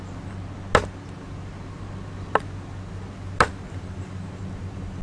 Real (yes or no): yes